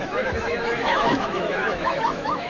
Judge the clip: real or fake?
fake